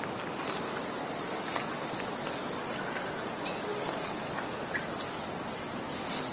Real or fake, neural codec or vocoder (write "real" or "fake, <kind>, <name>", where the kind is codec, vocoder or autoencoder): fake, vocoder, BigVGAN v2